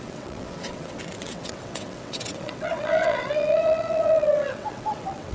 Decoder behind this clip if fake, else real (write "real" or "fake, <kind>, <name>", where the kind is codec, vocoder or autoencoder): fake, vocoder, WaveNeXt